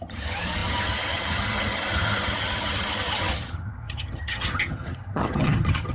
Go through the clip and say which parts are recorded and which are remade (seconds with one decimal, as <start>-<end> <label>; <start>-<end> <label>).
0.0-5.9 remade